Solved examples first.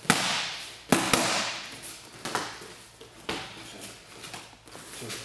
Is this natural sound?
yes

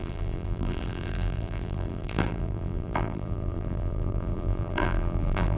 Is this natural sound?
no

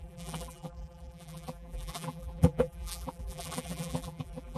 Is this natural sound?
no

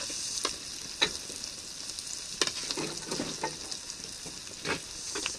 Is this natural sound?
yes